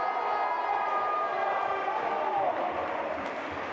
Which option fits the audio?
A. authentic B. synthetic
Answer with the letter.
A